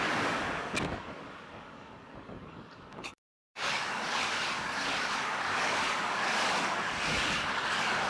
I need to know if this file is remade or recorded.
remade